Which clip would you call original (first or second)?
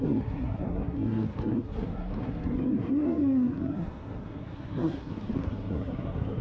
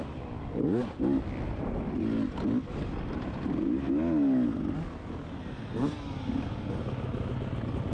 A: second